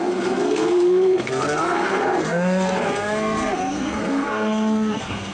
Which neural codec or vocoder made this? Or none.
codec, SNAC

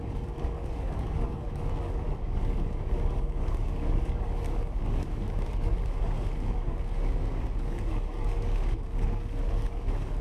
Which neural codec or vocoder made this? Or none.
codec, DAC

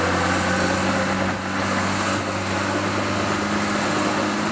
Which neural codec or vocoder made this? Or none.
none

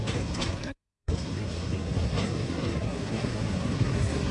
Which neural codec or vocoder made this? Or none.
codec, SNAC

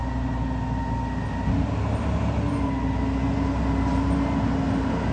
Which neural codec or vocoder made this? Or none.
none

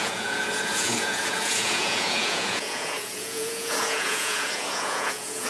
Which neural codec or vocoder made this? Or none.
vocoder, Vocos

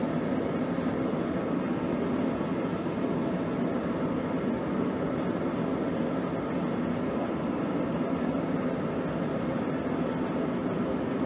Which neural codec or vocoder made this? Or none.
none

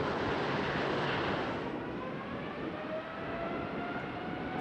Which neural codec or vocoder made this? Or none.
none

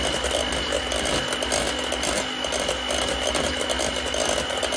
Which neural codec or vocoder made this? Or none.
none